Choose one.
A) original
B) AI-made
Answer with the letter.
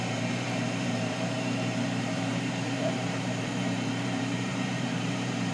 B